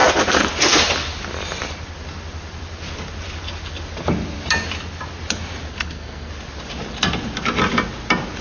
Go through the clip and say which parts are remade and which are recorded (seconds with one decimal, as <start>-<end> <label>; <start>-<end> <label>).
0.0-5.7 recorded; 5.7-6.3 remade; 6.3-8.4 recorded